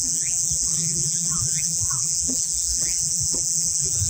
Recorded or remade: remade